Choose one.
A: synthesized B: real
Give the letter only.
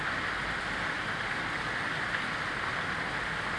B